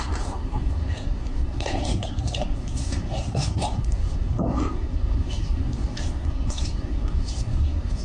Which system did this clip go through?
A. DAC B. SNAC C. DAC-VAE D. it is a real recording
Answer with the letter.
B